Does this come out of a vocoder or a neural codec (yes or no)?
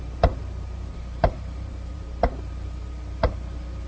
yes